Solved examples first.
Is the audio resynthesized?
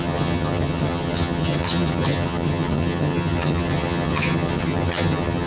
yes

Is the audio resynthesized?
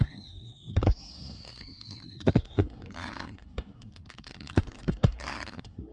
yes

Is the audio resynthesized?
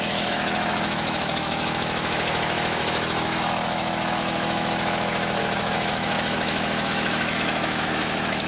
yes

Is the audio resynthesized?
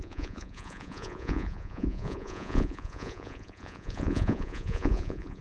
yes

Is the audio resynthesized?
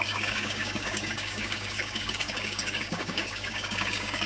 yes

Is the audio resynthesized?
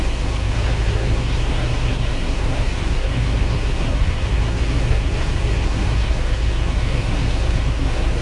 yes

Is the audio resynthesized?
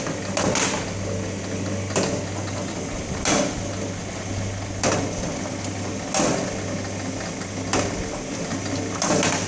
no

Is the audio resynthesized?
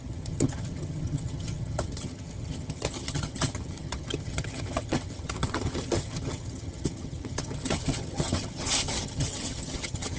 yes